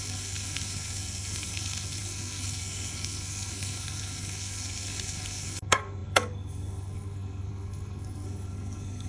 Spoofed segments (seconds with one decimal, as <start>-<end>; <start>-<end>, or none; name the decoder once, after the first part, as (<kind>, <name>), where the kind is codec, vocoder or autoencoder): 0.0-9.1 (codec, SNAC)